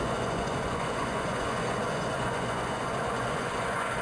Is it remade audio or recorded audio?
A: remade